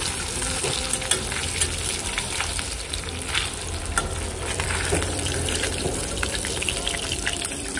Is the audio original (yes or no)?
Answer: no